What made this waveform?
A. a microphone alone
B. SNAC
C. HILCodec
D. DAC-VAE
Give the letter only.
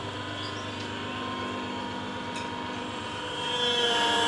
A